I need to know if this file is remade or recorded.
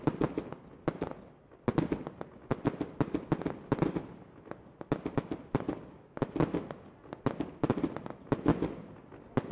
recorded